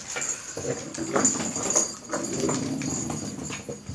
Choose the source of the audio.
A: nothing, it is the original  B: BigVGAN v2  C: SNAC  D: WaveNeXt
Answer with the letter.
A